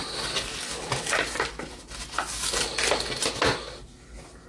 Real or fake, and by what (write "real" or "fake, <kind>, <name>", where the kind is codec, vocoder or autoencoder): real